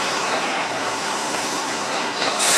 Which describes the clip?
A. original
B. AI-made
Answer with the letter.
B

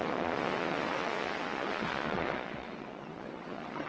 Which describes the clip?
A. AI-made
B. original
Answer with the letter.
A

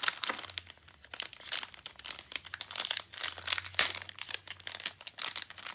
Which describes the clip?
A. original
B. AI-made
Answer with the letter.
A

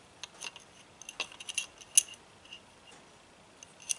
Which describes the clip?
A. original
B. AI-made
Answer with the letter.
A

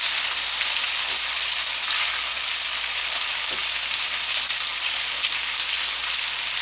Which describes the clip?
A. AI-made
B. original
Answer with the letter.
B